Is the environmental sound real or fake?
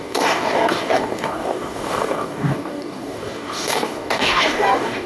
fake